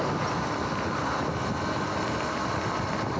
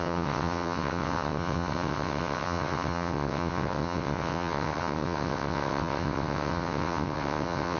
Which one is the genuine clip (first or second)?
first